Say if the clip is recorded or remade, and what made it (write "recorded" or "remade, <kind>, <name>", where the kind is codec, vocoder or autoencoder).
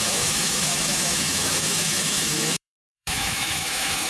remade, autoencoder, DAC-VAE